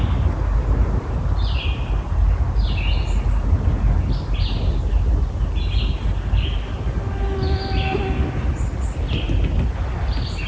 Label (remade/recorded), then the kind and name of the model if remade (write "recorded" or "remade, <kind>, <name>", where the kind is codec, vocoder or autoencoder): recorded